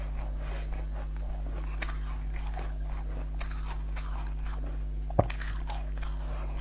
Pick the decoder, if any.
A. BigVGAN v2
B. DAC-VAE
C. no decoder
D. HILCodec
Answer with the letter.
C